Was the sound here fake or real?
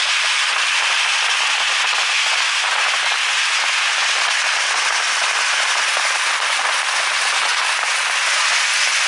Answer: real